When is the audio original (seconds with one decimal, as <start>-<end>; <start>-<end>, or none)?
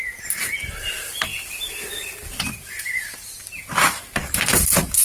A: 1.3-2.5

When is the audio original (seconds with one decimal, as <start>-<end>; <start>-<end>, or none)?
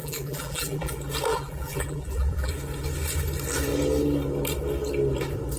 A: 0.9-1.3; 2.5-5.6